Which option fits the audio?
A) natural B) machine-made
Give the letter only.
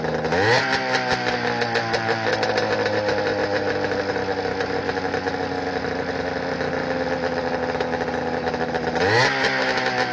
A